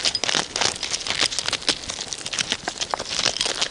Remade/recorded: recorded